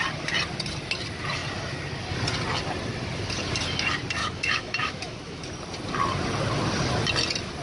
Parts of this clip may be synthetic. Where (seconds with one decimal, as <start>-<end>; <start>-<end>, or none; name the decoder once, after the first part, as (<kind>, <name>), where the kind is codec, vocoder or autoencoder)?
4.2-5.5 (autoencoder, DAC-VAE)